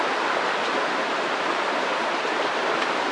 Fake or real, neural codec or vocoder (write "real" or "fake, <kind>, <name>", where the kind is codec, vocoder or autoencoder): real